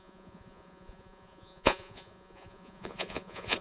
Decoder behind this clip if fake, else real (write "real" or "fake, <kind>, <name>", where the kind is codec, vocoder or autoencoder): fake, vocoder, Vocos